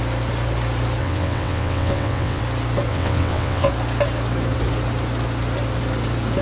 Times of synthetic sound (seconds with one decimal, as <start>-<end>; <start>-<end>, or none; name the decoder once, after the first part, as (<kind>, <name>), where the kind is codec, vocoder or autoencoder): 1.0-2.4 (vocoder, WaveNeXt); 2.9-3.7